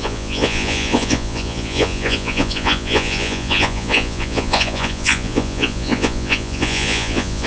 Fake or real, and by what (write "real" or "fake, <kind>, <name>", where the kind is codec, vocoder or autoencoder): fake, vocoder, Vocos